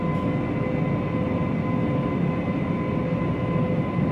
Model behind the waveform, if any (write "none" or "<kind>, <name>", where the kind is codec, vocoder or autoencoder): none